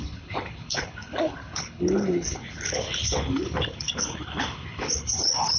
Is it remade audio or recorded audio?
remade